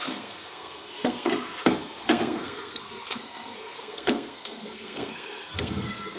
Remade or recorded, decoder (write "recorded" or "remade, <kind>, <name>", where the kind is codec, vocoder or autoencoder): remade, codec, SNAC